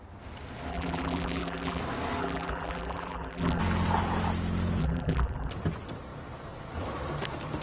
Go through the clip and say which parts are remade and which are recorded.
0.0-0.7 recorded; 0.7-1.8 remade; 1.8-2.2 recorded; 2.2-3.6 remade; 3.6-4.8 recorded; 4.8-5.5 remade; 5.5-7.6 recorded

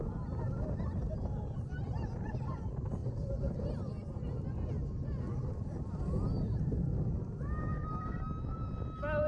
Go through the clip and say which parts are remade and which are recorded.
0.0-3.0 recorded; 3.0-3.5 remade; 3.5-9.3 recorded